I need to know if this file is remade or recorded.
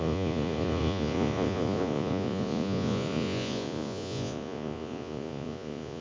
remade